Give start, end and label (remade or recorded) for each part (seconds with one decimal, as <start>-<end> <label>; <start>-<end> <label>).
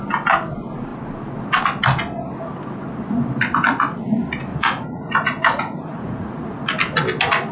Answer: 0.0-4.5 recorded; 4.5-6.3 remade; 6.3-7.5 recorded